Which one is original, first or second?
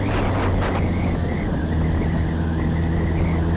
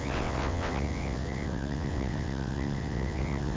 first